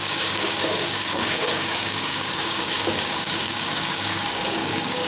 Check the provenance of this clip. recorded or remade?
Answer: remade